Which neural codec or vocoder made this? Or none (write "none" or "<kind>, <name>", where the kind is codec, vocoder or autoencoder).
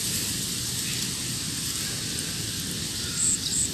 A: none